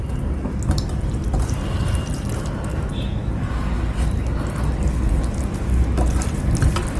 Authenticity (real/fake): real